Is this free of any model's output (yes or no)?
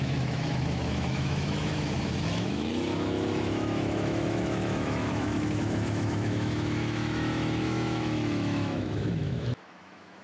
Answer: no